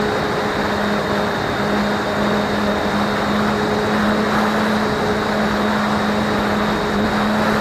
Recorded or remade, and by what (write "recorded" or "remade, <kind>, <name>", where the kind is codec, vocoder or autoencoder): recorded